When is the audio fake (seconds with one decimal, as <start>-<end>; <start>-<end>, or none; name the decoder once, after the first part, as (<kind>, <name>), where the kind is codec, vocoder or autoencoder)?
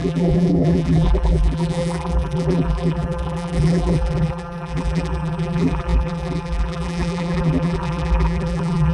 0.0-8.9 (vocoder, BigVGAN v2)